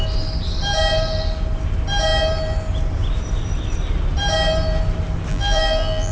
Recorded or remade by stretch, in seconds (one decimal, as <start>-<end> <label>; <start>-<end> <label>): 0.0-5.3 recorded; 5.3-6.1 remade